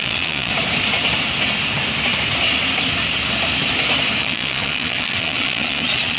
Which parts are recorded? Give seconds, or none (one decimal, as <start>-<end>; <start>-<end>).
0.5-4.2